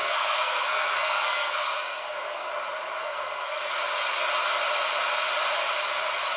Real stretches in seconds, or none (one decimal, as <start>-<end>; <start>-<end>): 2.5-3.0; 3.6-6.4